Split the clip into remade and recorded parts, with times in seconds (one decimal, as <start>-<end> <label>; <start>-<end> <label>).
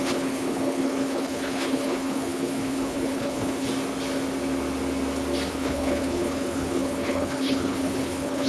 0.0-3.7 remade; 3.7-5.5 recorded; 5.5-8.5 remade